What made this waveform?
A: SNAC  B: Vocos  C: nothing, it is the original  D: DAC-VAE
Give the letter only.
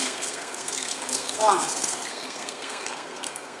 A